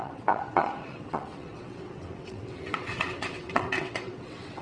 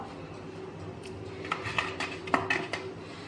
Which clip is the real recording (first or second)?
second